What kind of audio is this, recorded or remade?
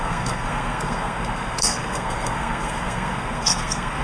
remade